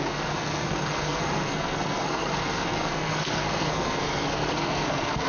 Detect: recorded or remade remade